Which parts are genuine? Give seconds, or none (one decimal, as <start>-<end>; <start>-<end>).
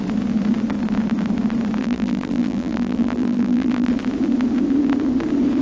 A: 0.0-1.8; 3.9-5.6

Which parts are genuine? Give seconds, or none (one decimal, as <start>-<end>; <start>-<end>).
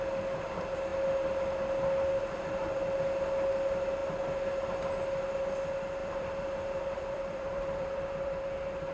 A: 0.0-6.0; 8.4-8.9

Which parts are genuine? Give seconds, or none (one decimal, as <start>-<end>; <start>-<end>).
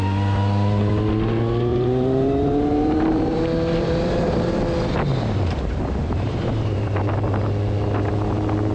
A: 0.0-1.7; 4.6-5.1; 7.1-8.7